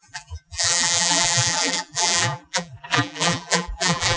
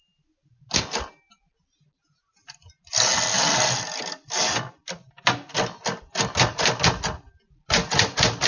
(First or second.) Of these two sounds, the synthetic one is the first